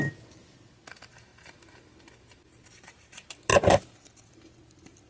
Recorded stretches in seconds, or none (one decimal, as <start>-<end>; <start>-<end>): 0.0-5.1